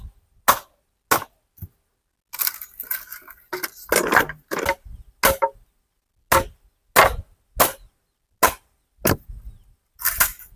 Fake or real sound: real